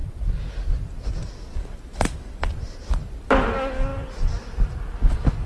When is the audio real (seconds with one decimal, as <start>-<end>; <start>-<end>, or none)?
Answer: 0.0-5.5